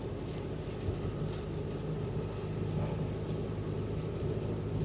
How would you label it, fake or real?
real